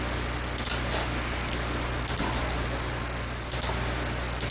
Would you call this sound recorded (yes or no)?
yes